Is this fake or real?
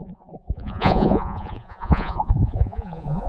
fake